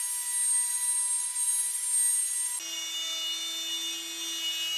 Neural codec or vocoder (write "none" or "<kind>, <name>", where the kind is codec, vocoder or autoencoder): none